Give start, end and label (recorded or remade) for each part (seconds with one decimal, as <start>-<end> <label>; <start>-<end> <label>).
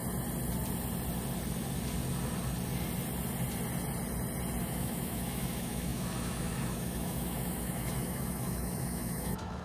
0.0-4.6 recorded; 4.6-9.6 remade